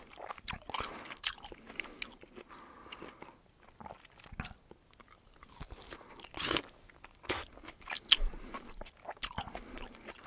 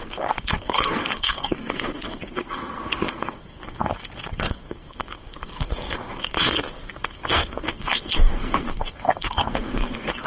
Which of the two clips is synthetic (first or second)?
second